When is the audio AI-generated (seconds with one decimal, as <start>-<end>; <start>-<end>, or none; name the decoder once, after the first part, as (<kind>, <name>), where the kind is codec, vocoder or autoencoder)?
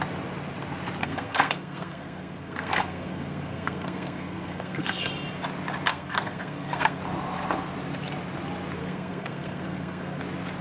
1.0-5.1 (codec, SNAC); 5.9-7.0; 8.8-10.2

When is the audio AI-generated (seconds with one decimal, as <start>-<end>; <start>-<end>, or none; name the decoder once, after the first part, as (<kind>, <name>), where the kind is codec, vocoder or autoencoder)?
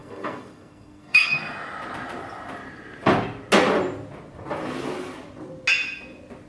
0.0-1.4 (codec, SNAC)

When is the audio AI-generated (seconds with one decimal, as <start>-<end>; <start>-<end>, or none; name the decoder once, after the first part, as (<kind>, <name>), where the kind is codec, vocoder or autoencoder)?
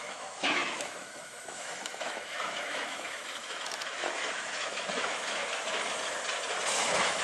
0.0-5.4 (autoencoder, DAC-VAE); 6.8-7.2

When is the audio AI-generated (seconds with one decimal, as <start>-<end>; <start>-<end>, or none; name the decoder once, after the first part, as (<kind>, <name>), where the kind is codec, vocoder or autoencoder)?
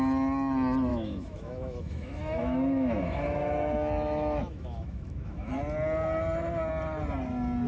0.9-5.5 (autoencoder, DAC-VAE)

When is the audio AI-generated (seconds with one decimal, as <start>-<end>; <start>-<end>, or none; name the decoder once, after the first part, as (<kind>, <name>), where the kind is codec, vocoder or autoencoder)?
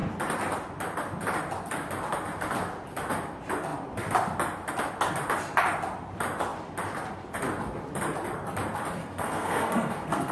9.0-10.3 (codec, SNAC)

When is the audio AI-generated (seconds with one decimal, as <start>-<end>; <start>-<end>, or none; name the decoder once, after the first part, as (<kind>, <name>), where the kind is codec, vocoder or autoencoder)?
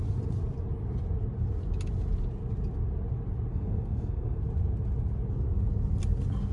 3.5-4.4 (codec, SNAC)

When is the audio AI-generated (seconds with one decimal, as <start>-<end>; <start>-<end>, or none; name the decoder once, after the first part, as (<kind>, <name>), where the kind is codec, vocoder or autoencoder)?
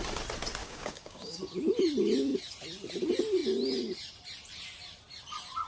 0.6-1.4 (codec, DAC)